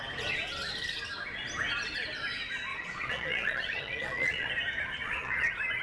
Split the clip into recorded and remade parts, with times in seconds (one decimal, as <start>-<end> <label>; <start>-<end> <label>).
0.0-2.7 recorded; 2.7-4.5 remade; 4.5-5.0 recorded; 5.0-5.8 remade